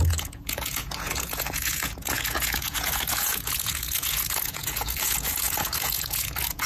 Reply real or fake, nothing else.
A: fake